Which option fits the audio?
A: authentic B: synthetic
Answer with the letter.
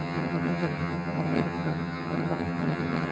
B